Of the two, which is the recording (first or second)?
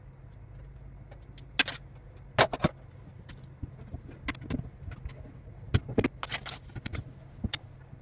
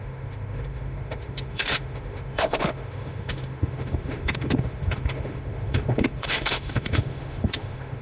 first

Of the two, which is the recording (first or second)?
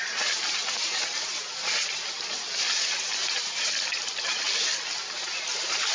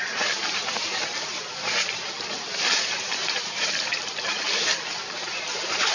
first